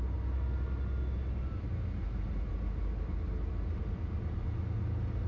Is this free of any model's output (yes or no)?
yes